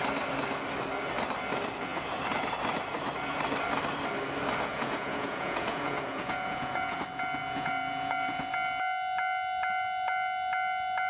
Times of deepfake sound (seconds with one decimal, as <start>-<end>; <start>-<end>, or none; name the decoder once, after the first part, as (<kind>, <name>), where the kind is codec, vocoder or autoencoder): 4.7-7.0 (vocoder, Vocos); 7.4-8.5